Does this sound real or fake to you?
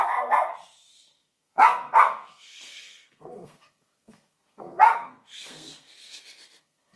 fake